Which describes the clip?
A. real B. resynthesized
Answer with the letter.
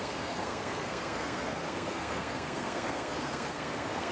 B